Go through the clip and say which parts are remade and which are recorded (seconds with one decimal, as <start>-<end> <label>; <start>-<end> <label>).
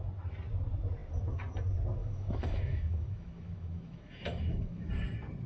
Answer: 0.0-2.0 recorded; 2.0-4.9 remade; 4.9-5.5 recorded